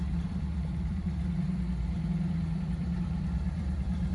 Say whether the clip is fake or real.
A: fake